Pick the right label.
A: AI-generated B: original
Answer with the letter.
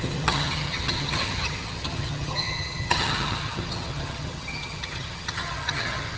A